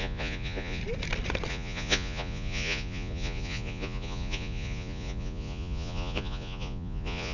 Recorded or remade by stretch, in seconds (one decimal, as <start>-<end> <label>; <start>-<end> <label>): 0.0-0.8 remade; 0.8-1.5 recorded; 1.5-7.3 remade